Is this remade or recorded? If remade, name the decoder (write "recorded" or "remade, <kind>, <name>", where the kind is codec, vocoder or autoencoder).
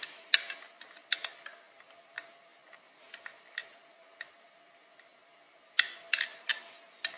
recorded